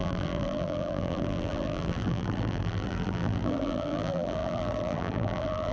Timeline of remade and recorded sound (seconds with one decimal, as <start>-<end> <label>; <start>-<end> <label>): 0.0-5.7 remade